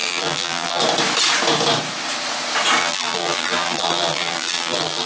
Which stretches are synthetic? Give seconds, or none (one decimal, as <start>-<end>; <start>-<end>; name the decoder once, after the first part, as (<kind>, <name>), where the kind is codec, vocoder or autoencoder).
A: 0.0-0.8 (vocoder, BigVGAN v2); 2.8-5.1